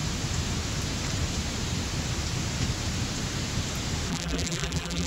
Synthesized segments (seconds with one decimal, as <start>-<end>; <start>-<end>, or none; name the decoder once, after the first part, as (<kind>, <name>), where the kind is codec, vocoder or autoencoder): 4.1-5.1 (vocoder, BigVGAN v2)